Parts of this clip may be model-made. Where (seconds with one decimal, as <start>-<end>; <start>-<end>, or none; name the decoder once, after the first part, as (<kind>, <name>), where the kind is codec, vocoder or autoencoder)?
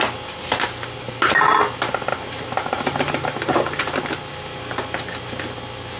none